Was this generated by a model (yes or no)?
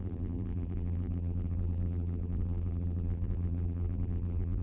yes